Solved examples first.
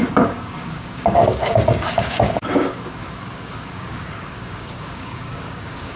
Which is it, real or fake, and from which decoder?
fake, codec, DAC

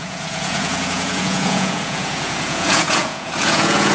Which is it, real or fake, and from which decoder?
fake, vocoder, Vocos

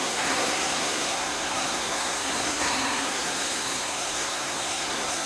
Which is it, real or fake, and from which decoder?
fake, codec, SNAC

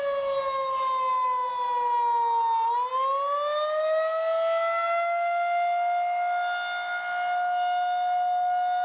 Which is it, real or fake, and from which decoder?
real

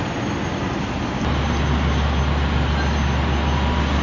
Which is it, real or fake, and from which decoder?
real